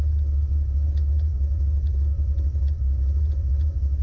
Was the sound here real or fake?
real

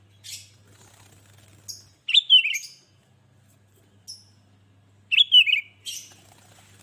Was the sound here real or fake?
real